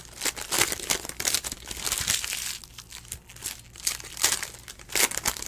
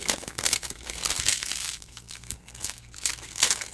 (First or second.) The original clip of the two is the first